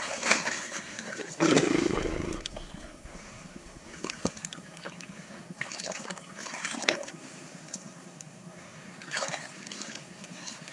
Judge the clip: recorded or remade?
remade